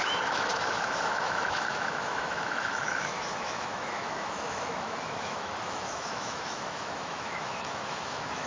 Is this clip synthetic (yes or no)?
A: yes